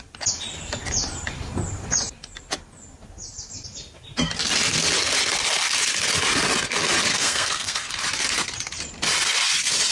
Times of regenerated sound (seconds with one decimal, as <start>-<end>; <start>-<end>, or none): 7.1-7.9